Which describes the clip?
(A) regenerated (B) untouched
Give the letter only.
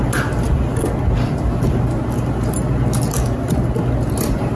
B